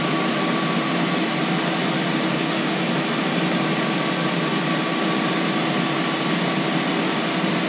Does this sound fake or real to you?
real